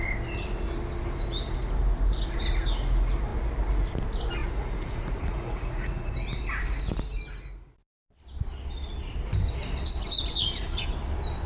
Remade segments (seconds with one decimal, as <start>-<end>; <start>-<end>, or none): 4.4-6.1